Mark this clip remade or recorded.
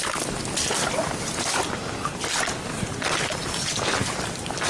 recorded